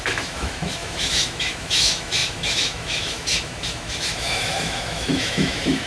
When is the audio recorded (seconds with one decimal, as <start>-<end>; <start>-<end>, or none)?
none